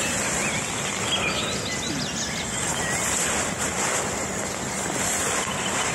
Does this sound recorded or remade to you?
recorded